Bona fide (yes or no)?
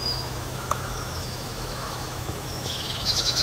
no